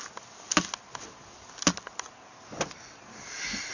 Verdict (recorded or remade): recorded